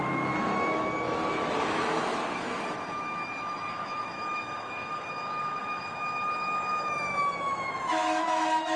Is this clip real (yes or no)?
no